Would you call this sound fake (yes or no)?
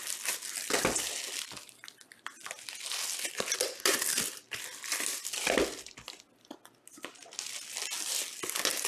no